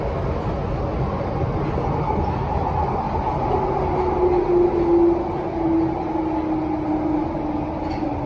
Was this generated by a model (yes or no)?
no